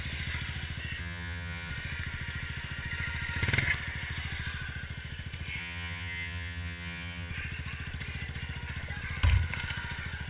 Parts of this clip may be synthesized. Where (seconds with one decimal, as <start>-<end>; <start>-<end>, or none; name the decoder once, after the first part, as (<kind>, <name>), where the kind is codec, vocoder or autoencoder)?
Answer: 1.0-1.7 (vocoder, HiFi-GAN); 5.6-7.3